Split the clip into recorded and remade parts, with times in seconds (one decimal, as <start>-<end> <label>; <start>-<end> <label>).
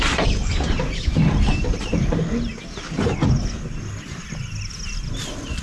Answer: 0.0-2.5 remade; 2.5-5.6 recorded